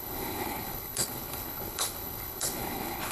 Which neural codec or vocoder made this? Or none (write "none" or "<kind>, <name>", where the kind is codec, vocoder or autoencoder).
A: codec, HILCodec